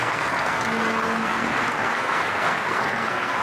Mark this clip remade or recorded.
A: remade